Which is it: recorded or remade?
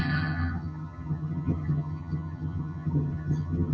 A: remade